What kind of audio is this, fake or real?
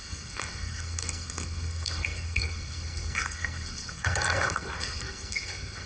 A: fake